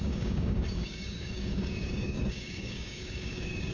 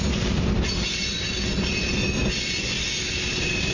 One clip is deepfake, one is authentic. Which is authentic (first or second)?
second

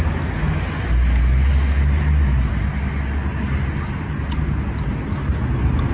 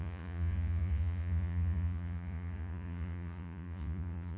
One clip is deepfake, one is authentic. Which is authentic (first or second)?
first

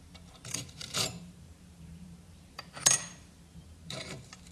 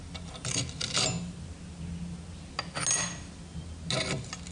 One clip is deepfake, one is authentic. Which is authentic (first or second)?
second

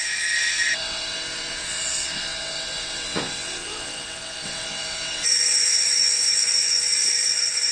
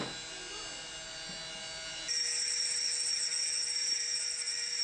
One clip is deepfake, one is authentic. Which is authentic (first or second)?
second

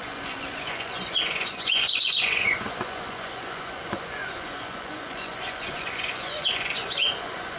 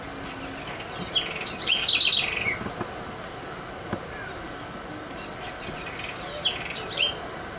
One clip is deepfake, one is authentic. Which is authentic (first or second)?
second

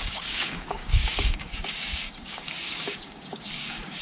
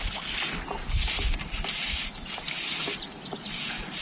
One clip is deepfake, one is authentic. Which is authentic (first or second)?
second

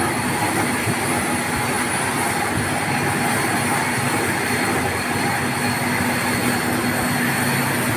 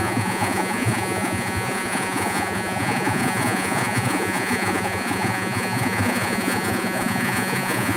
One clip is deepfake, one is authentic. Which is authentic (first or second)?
first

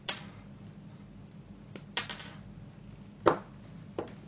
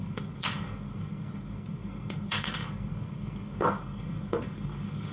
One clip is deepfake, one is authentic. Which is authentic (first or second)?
first